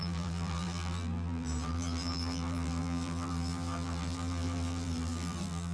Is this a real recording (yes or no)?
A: no